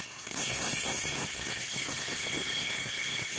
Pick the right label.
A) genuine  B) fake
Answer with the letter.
B